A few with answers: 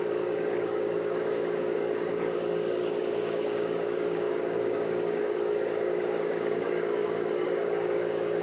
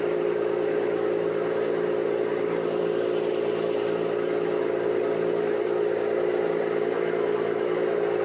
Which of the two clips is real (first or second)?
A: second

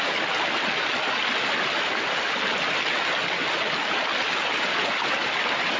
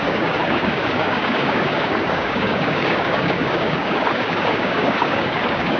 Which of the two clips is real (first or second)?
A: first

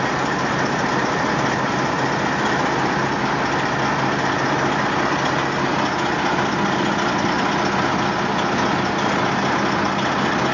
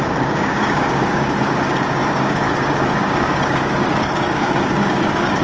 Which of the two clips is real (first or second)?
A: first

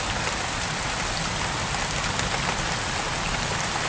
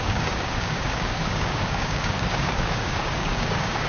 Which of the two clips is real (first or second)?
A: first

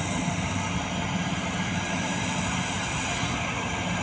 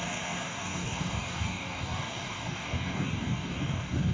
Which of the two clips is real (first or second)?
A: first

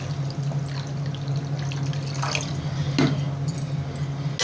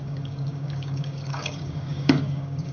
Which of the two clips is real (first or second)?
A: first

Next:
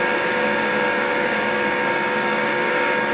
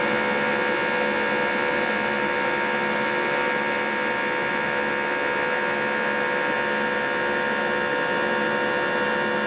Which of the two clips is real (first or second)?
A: second